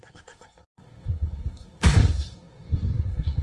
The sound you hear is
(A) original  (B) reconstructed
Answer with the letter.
B